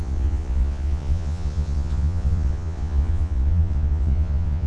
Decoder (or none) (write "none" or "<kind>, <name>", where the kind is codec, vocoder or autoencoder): vocoder, Vocos